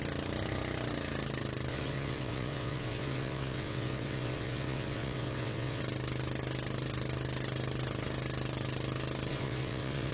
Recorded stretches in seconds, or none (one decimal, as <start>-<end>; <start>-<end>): 0.0-1.7; 5.8-9.3